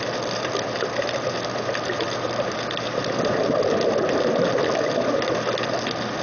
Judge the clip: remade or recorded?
recorded